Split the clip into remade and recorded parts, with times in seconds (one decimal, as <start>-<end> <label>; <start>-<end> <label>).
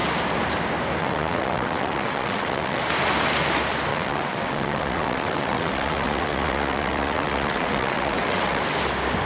0.0-1.0 recorded; 1.0-2.8 remade; 2.8-3.9 recorded; 3.9-8.6 remade; 8.6-9.3 recorded